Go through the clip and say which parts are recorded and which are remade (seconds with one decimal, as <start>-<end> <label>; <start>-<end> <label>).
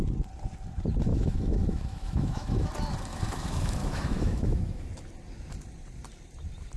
0.0-1.1 recorded; 1.1-2.7 remade; 2.7-3.1 recorded; 3.1-4.9 remade; 4.9-6.8 recorded